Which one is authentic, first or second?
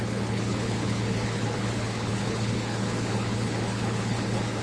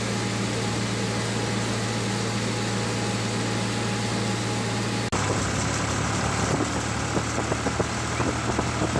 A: second